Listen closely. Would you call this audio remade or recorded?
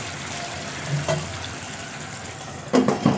recorded